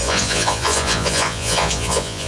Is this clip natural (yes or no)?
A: no